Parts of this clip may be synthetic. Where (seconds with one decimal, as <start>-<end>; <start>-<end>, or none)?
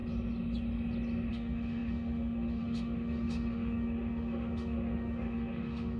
1.3-6.0